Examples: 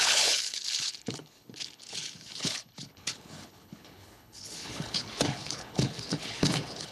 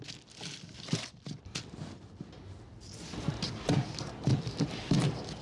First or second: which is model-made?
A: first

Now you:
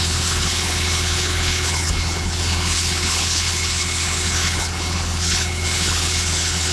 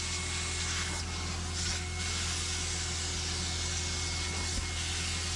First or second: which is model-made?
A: first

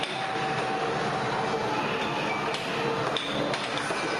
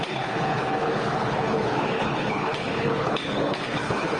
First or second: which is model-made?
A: second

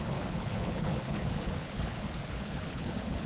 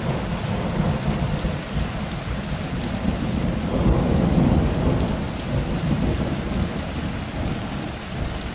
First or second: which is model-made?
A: first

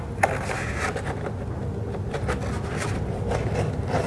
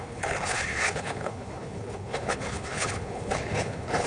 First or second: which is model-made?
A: second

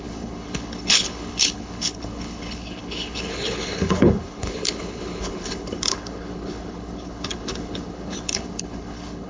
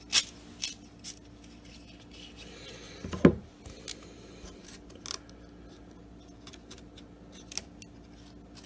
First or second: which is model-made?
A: first